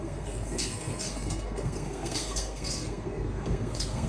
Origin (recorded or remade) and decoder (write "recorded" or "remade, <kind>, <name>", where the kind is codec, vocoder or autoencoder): remade, codec, SNAC